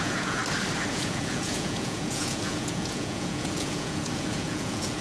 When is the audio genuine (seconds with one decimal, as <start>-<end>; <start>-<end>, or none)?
0.4-0.9